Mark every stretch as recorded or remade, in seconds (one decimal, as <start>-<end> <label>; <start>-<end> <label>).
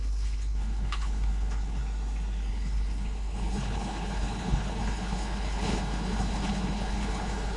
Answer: 0.0-1.8 remade; 1.8-2.5 recorded; 2.5-7.6 remade